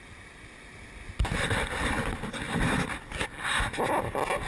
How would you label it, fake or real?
real